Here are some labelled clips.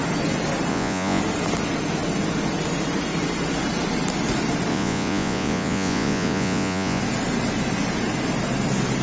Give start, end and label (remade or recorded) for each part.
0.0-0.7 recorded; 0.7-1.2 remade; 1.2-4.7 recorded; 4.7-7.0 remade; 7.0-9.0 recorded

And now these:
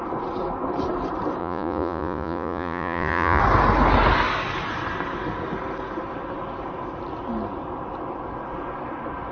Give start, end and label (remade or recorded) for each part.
0.0-1.4 recorded; 1.4-3.4 remade; 3.4-9.3 recorded

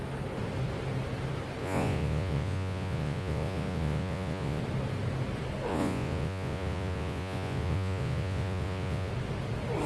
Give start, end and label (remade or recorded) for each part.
0.0-1.6 recorded; 1.6-4.6 remade; 4.6-5.7 recorded; 5.7-9.1 remade; 9.1-9.9 recorded

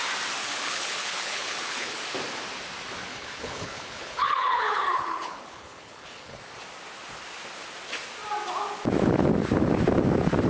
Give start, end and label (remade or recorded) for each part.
0.0-0.4 recorded; 0.4-2.0 remade; 2.0-3.1 recorded; 3.1-6.4 remade; 6.4-10.5 recorded

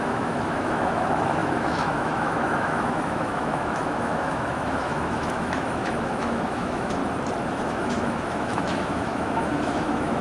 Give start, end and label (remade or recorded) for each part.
0.0-7.0 remade; 7.0-7.5 recorded; 7.5-10.2 remade

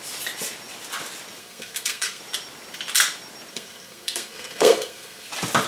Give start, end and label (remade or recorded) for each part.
0.0-1.4 recorded; 1.4-2.2 remade; 2.2-3.5 recorded; 3.5-5.3 remade; 5.3-5.7 recorded

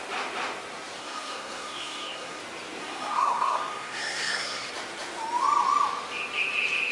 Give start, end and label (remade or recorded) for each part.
0.0-1.0 recorded; 1.0-2.4 remade; 2.4-2.8 recorded; 2.8-4.7 remade; 4.7-6.9 recorded